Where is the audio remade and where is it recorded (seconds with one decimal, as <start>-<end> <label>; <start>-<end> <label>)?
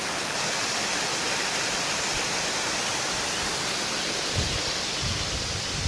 0.0-5.9 recorded